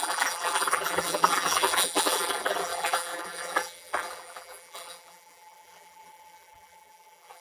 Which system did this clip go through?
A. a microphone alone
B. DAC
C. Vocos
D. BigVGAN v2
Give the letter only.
D